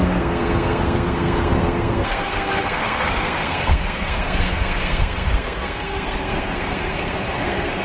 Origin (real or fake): fake